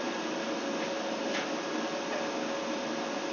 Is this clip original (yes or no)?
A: yes